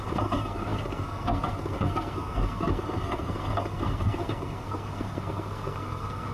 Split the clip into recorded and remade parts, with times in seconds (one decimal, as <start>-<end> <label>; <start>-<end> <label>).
0.0-6.3 remade